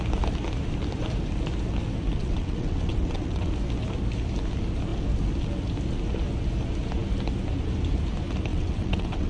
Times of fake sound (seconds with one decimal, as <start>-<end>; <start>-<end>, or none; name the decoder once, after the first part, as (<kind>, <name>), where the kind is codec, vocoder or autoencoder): 2.2-3.5 (vocoder, WaveNeXt); 8.5-9.3